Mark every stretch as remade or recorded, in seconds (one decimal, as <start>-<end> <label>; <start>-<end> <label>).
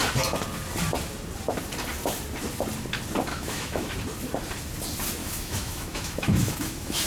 0.0-3.3 recorded; 3.3-3.9 remade; 3.9-5.2 recorded; 5.2-7.1 remade